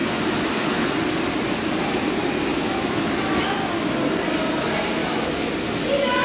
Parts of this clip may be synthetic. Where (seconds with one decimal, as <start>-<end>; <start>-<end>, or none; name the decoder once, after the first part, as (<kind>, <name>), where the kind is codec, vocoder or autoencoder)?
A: 0.0-0.9 (autoencoder, DAC-VAE); 2.5-3.4; 5.0-5.5